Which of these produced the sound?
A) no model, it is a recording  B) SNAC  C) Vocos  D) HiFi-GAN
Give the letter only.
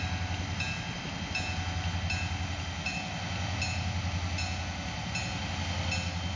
A